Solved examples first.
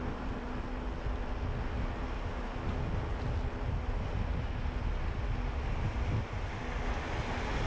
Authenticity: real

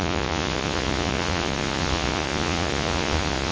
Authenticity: fake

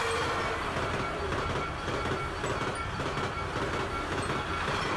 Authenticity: real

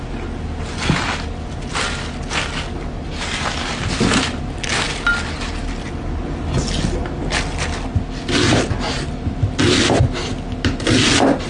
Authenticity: real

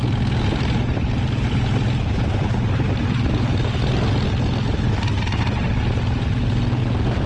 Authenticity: real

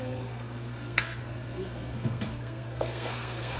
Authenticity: fake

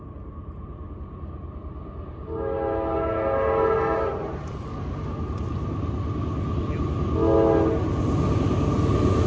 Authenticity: real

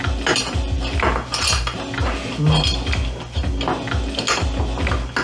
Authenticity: real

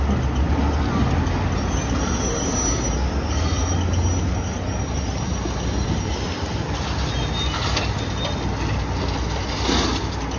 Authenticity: real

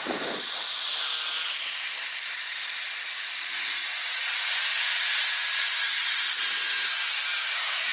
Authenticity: real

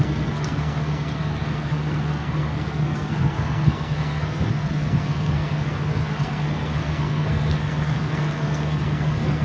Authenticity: fake